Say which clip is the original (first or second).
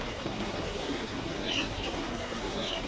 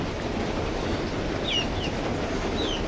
second